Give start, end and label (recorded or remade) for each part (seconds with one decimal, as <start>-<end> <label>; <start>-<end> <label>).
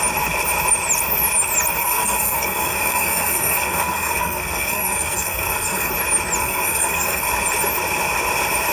0.0-1.8 recorded; 1.8-5.9 remade; 5.9-6.4 recorded; 6.4-7.3 remade; 7.3-8.7 recorded